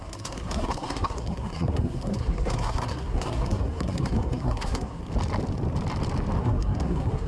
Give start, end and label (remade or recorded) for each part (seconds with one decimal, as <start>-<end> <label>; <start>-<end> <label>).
0.0-5.0 remade; 5.0-6.4 recorded; 6.4-7.3 remade